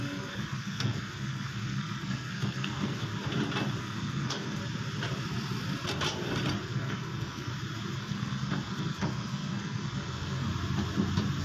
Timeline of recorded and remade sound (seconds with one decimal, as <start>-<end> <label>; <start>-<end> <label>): 0.0-3.1 remade; 3.1-3.8 recorded; 3.8-4.6 remade; 4.6-6.6 recorded; 6.6-7.5 remade; 7.5-8.0 recorded; 8.0-10.5 remade; 10.5-11.4 recorded